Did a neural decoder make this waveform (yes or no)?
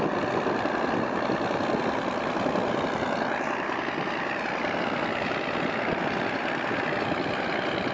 no